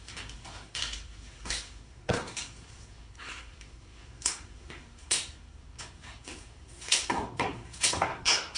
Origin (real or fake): fake